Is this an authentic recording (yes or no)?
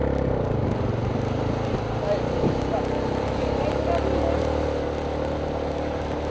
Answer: yes